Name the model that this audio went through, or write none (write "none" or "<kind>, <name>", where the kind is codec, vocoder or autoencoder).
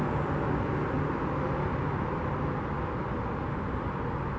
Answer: none